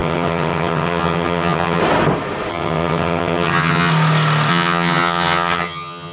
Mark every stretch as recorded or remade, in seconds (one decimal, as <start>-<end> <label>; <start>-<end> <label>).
0.0-1.8 remade; 1.8-2.5 recorded; 2.5-3.9 remade; 3.9-4.5 recorded; 4.5-6.1 remade